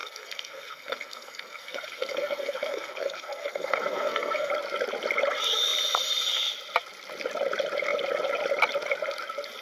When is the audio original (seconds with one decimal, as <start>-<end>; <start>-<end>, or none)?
4.5-9.6